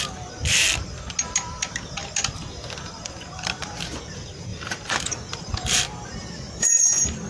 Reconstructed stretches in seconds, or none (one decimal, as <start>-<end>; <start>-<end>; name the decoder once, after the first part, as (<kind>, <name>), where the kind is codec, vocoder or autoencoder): 0.0-0.6 (vocoder, BigVGAN v2); 2.8-7.3